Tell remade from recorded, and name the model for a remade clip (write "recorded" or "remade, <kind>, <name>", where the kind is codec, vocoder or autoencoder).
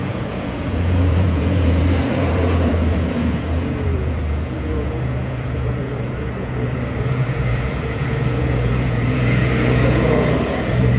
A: remade, vocoder, Vocos